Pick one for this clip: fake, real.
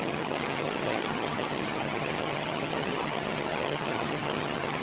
fake